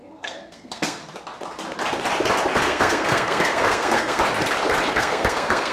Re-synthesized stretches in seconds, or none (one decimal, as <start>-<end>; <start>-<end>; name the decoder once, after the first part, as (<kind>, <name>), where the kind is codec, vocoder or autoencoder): 0.0-1.0 (codec, SNAC); 2.6-4.2; 4.9-5.7